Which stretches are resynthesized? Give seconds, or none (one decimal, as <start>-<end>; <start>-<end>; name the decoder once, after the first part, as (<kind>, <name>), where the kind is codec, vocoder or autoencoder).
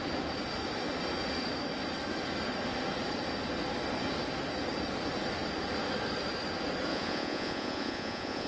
6.9-8.5 (vocoder, Vocos)